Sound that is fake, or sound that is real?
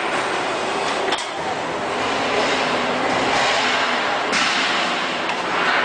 real